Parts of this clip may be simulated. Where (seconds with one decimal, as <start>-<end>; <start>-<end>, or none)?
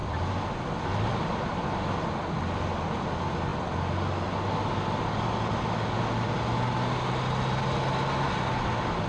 none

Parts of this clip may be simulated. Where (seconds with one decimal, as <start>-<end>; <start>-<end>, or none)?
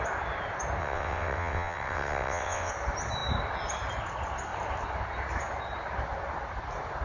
0.8-2.7